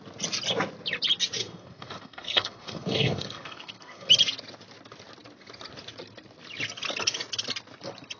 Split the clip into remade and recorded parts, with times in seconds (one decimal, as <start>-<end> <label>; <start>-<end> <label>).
0.0-1.4 recorded; 1.4-4.1 remade; 4.1-8.2 recorded